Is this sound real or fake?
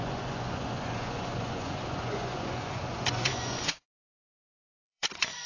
fake